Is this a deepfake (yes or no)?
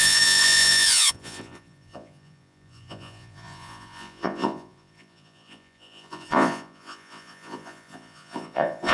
yes